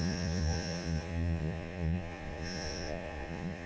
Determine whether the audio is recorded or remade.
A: remade